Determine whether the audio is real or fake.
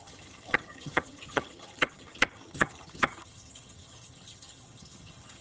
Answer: fake